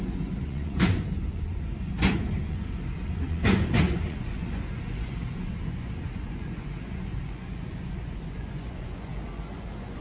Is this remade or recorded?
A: remade